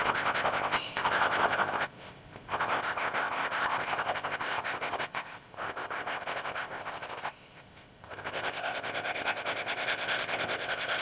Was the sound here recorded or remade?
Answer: remade